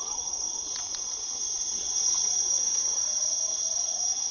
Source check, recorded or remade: remade